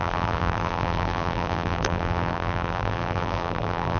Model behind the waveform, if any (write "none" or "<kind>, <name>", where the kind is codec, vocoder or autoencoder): vocoder, BigVGAN v2